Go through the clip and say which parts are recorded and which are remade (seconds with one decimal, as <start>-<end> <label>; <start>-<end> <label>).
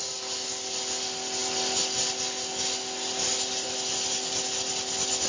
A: 0.0-5.3 recorded